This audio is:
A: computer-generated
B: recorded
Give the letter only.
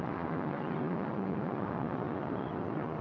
A